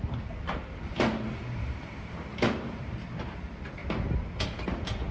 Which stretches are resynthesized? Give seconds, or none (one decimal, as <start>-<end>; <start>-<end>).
0.0-3.8; 4.4-5.1